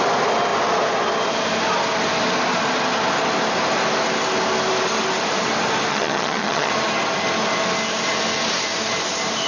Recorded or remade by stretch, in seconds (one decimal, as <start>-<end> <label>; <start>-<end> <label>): 0.0-5.9 recorded; 5.9-6.7 remade; 6.7-9.5 recorded